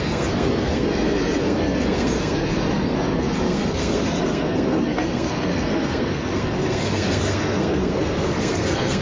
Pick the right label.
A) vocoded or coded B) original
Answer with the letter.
A